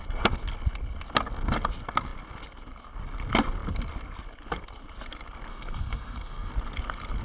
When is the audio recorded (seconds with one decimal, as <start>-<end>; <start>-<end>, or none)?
0.0-5.5; 6.5-7.2